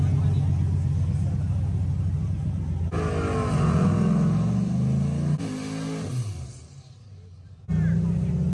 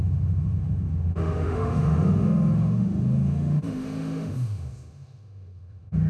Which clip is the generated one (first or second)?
second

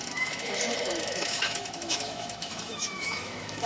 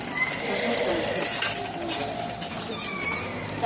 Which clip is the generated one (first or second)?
first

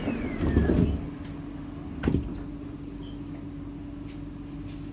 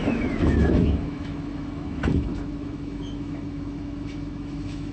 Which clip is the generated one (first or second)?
second